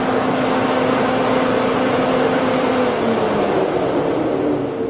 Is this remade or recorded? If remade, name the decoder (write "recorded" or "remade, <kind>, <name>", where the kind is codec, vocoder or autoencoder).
recorded